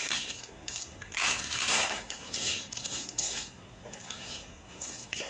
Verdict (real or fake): fake